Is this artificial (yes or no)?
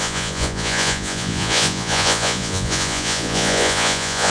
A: yes